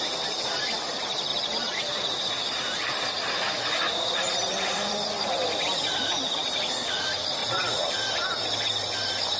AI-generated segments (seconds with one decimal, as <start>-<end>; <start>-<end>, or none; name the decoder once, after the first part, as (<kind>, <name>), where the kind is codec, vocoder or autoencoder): 1.3-3.1 (vocoder, BigVGAN v2); 7.4-8.7